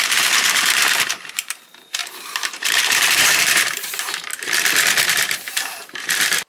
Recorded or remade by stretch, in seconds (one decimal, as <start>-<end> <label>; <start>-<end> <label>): 0.0-4.3 remade; 4.3-5.1 recorded; 5.1-6.5 remade